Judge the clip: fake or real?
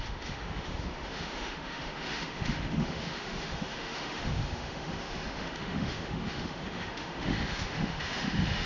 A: fake